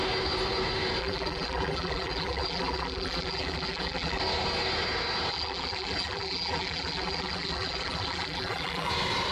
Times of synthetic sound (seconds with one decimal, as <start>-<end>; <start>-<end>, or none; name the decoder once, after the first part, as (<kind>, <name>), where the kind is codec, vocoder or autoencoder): 1.0-4.2 (vocoder, BigVGAN v2); 5.3-8.9